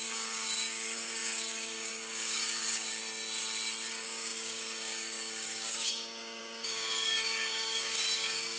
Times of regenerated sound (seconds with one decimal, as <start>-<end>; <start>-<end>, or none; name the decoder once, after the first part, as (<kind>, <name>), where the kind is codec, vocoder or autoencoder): 0.0-3.0 (codec, DAC); 3.9-8.6